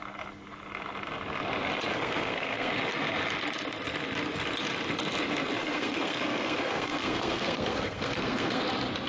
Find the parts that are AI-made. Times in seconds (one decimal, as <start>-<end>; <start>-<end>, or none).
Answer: 1.9-2.7; 5.6-8.6